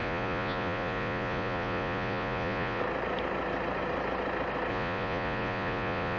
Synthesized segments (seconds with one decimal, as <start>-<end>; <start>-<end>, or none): 0.0-2.8; 4.7-6.2